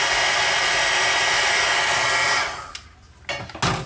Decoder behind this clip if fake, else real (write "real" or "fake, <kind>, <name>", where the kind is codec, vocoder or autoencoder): real